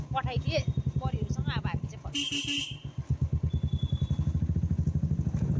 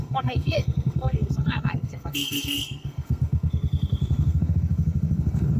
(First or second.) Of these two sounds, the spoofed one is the second